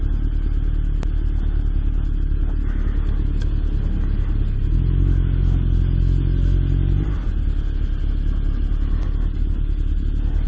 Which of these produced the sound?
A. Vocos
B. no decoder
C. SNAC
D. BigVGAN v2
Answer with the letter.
B